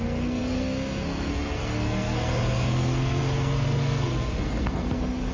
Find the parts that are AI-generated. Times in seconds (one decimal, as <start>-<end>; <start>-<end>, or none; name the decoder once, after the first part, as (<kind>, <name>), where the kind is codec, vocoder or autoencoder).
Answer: 0.0-5.3 (codec, SNAC)